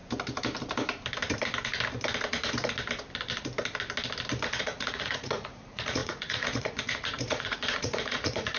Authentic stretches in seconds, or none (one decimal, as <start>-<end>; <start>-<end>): 0.0-4.6